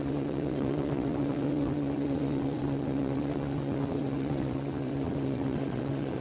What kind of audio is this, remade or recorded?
remade